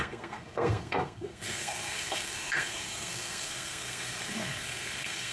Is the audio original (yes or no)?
no